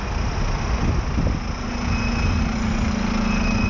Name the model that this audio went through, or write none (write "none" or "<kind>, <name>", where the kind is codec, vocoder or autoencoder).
none